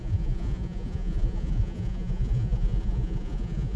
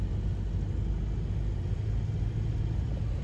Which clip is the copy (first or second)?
first